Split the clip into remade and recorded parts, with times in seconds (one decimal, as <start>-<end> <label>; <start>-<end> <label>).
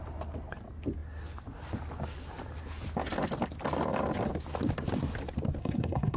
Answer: 0.0-5.6 recorded; 5.6-6.2 remade